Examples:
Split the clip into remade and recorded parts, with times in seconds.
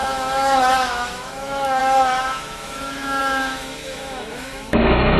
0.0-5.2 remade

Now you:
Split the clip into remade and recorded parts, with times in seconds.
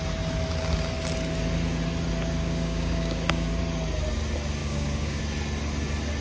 0.0-2.4 recorded; 2.4-3.6 remade; 3.6-4.6 recorded; 4.6-5.2 remade; 5.2-6.2 recorded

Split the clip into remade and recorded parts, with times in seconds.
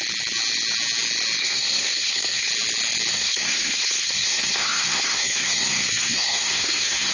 0.0-1.4 recorded; 1.4-2.5 remade; 2.5-3.1 recorded; 3.1-7.1 remade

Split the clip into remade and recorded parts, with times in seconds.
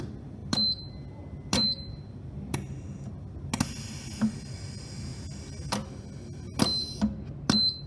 0.0-7.9 recorded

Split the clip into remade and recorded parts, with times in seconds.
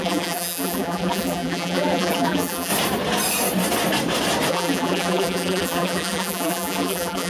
0.0-2.7 remade; 2.7-4.5 recorded; 4.5-7.3 remade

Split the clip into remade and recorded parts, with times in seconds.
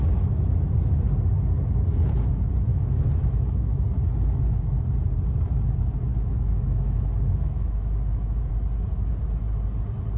0.0-2.7 recorded; 2.7-3.8 remade; 3.8-6.1 recorded; 6.1-8.5 remade; 8.5-10.2 recorded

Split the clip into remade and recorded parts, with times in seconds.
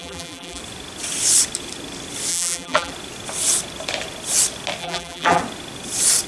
0.0-0.6 remade; 0.6-2.3 recorded; 2.3-2.9 remade; 2.9-4.8 recorded; 4.8-5.4 remade; 5.4-6.3 recorded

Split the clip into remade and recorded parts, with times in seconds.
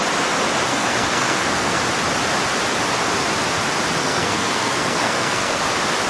0.0-0.7 recorded; 0.7-1.8 remade; 1.8-4.0 recorded; 4.0-5.6 remade; 5.6-6.1 recorded